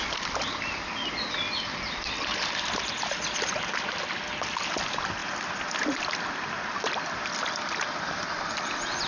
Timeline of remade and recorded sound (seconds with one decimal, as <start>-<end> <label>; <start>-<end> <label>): 0.0-9.1 recorded